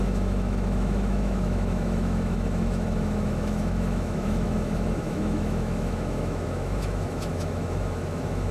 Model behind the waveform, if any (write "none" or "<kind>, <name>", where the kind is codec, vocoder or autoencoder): autoencoder, DAC-VAE